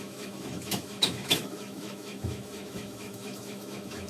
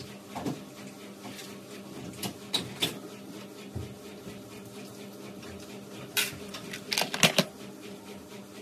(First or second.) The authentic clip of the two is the second